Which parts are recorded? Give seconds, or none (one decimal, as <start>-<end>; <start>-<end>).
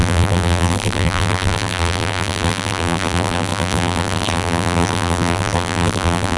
none